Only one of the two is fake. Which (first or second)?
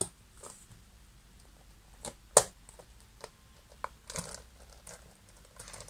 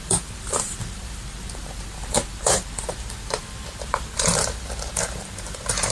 second